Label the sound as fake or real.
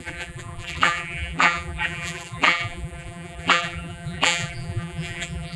fake